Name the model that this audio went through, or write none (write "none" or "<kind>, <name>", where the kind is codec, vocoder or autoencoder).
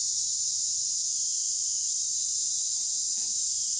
vocoder, BigVGAN v2